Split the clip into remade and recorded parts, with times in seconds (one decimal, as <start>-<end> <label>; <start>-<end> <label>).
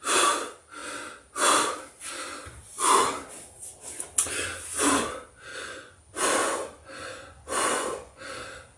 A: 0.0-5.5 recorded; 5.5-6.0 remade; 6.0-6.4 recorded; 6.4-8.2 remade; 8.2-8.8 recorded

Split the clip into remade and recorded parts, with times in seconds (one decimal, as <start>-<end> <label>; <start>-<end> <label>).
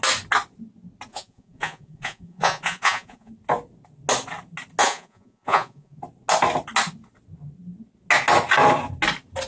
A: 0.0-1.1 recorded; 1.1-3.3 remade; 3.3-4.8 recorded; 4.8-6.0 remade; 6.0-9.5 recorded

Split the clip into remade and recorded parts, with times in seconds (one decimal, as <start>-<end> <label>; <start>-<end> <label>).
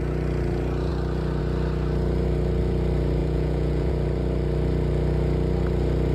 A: 0.0-3.2 recorded; 3.2-3.9 remade; 3.9-6.1 recorded